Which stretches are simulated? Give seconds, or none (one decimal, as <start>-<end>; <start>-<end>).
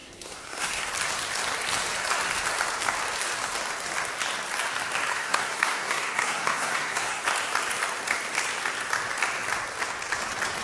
0.0-0.8; 5.1-7.2